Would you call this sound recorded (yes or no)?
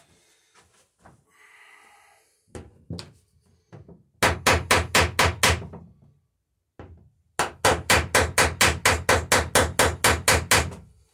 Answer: yes